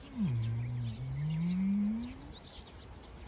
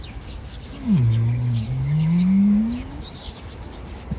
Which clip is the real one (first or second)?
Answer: first